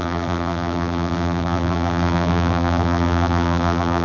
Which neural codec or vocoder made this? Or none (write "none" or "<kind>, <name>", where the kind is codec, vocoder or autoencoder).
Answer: vocoder, BigVGAN v2